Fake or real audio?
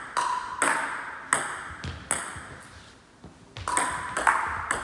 real